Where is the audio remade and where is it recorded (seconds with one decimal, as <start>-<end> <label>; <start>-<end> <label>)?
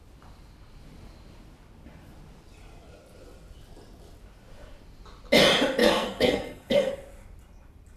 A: 0.0-5.8 recorded; 5.8-6.9 remade; 6.9-8.0 recorded